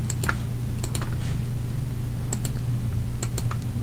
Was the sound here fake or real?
real